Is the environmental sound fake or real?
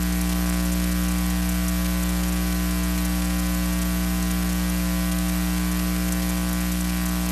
real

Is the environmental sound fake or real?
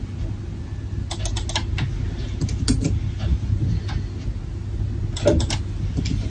real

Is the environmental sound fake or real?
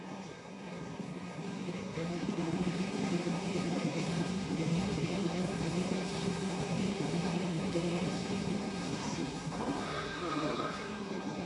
fake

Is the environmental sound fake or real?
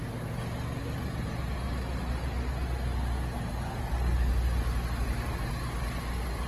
real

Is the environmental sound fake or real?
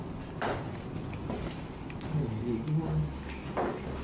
real